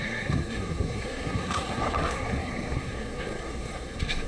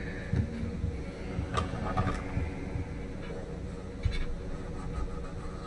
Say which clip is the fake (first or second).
first